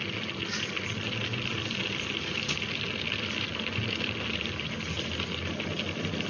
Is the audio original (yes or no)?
yes